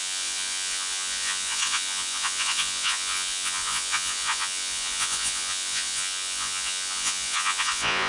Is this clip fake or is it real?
fake